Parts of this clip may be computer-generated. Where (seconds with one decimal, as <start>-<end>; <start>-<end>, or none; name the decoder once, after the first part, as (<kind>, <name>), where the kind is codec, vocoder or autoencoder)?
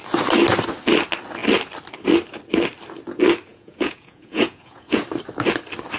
3.5-5.0 (vocoder, Vocos)